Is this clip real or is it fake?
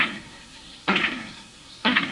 fake